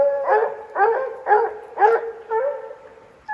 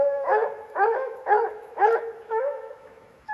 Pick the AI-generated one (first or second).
second